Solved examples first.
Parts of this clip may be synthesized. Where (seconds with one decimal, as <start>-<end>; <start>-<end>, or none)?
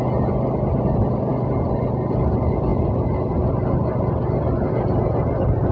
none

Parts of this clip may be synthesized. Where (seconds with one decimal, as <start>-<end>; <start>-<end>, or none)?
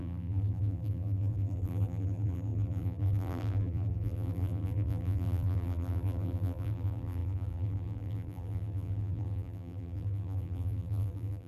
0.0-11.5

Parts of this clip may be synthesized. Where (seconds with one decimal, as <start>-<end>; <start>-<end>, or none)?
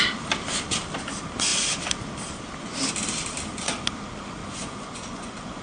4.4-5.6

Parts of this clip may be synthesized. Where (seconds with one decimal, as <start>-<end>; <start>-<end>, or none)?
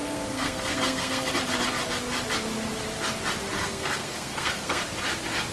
0.0-1.3; 3.6-4.8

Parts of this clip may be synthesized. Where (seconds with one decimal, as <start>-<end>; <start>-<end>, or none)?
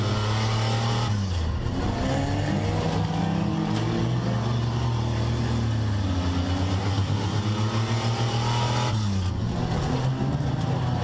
6.8-7.4